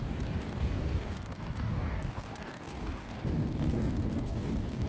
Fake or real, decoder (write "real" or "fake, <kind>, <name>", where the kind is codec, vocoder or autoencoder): fake, codec, DAC